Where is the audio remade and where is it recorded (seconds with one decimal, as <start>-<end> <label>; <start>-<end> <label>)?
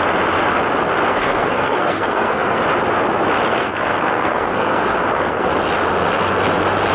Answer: 0.0-1.1 recorded; 1.1-2.6 remade; 2.6-3.5 recorded; 3.5-5.5 remade; 5.5-6.9 recorded